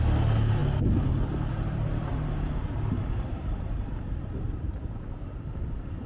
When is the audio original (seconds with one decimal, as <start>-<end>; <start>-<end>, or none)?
0.0-2.1; 5.6-6.1